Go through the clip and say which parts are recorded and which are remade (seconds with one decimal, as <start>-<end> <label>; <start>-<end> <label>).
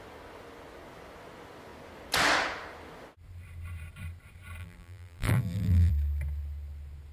0.0-4.6 recorded; 4.6-5.9 remade; 5.9-7.1 recorded